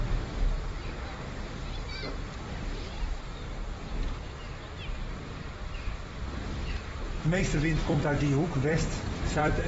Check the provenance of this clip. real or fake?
fake